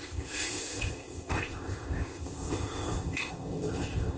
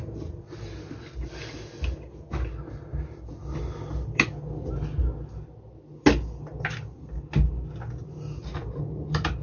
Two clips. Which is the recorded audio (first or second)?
second